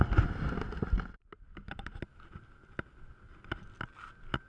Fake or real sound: real